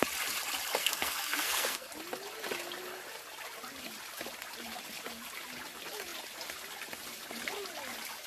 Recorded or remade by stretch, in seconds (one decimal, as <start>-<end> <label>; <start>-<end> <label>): 0.0-0.8 recorded; 0.8-1.9 remade; 1.9-8.3 recorded